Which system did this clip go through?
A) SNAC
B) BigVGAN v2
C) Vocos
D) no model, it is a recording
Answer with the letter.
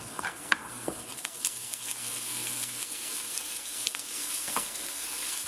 A